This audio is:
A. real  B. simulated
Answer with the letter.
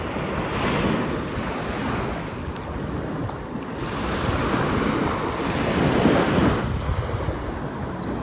A